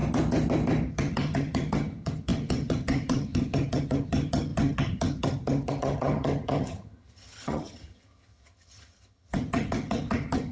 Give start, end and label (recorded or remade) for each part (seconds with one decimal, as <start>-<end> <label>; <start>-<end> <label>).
0.0-0.9 recorded; 0.9-10.5 remade